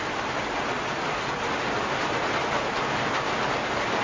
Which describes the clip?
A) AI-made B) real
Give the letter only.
B